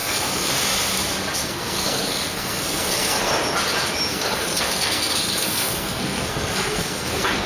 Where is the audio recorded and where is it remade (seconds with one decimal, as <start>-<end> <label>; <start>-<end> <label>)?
0.0-0.5 remade; 0.5-1.4 recorded; 1.4-3.3 remade; 3.3-4.1 recorded; 4.1-7.5 remade